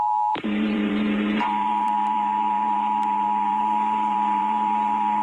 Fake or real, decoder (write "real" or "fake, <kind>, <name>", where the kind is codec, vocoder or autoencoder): fake, vocoder, BigVGAN v2